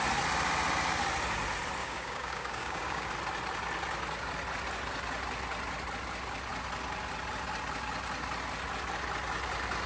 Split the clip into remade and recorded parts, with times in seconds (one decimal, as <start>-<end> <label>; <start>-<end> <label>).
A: 0.0-1.8 recorded; 1.8-3.1 remade; 3.1-9.9 recorded